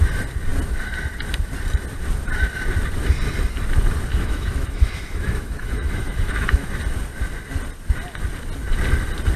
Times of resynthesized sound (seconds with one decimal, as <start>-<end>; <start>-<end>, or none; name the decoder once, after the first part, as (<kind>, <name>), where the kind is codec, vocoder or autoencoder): 4.1-6.8 (autoencoder, DAC-VAE)